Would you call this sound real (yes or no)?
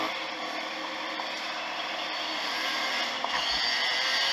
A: yes